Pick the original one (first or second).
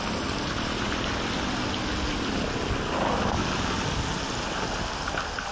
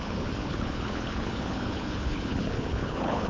first